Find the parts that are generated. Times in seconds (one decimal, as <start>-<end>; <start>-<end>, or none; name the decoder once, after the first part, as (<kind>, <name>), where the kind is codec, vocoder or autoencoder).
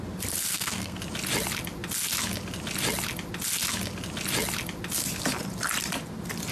0.5-1.0 (codec, SNAC)